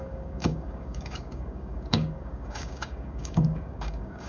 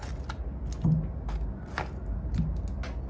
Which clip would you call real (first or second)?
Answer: second